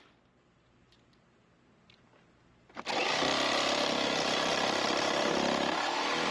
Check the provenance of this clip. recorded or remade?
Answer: recorded